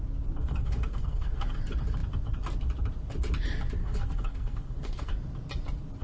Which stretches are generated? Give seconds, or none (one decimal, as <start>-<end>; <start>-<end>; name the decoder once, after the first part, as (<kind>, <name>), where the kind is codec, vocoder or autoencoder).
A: 0.4-1.5 (codec, SNAC); 3.8-5.1